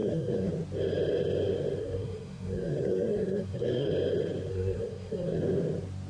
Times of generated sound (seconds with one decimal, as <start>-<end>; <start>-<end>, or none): 0.0-0.5; 1.8-3.9; 4.5-5.4